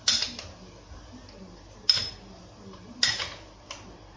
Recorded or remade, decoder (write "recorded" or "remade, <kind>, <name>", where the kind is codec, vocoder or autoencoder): recorded